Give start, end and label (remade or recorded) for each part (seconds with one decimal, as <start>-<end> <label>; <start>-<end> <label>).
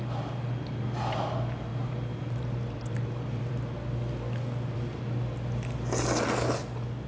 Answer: 0.0-1.7 recorded; 1.7-3.5 remade; 3.5-7.1 recorded